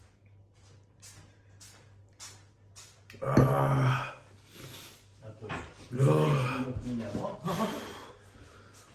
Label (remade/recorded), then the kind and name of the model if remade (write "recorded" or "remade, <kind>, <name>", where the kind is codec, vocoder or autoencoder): recorded